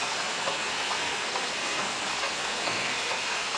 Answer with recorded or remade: remade